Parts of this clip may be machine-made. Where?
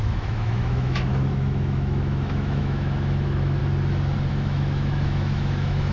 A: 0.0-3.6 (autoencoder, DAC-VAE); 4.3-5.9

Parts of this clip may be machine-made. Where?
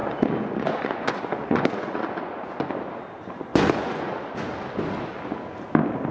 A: 0.0-2.7 (vocoder, Vocos); 3.5-4.3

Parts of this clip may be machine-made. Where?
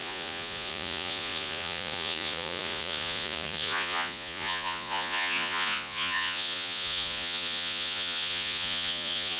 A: 0.0-9.4 (vocoder, Vocos)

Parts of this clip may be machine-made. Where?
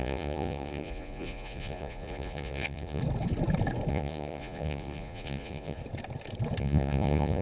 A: 0.0-3.0 (vocoder, Vocos); 3.9-5.8; 6.6-7.4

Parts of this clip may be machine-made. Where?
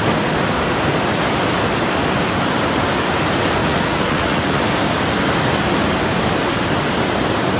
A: 3.6-4.6 (vocoder, Vocos)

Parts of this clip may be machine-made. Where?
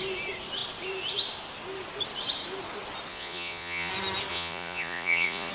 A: 3.1-3.9 (vocoder, Vocos); 4.3-5.5